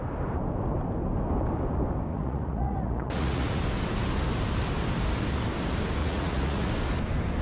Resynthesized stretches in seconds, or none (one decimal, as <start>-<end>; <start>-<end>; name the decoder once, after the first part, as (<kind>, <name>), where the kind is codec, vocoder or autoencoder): 2.1-3.6 (vocoder, Vocos); 6.0-6.7